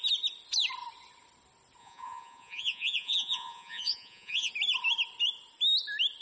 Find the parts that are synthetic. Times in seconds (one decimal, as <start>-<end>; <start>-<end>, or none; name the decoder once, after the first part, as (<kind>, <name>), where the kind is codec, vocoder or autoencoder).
1.8-4.5 (vocoder, Vocos)